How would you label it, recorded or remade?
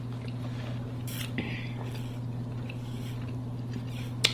recorded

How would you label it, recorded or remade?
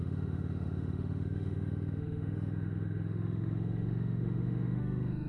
remade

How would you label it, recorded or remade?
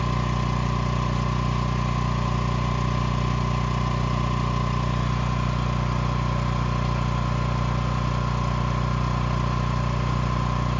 recorded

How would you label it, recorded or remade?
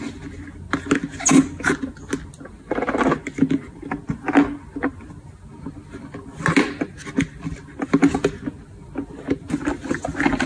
recorded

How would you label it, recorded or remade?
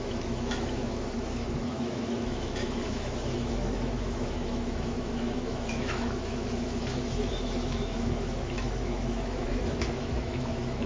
remade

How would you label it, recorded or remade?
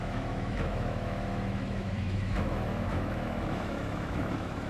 remade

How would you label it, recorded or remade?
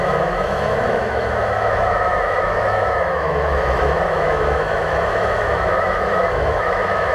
remade